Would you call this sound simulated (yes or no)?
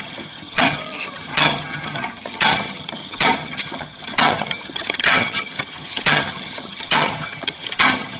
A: yes